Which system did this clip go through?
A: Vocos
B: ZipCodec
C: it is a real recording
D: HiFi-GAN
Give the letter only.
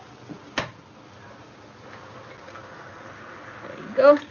C